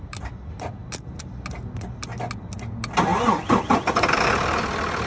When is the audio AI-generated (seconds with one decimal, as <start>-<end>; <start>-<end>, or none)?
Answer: none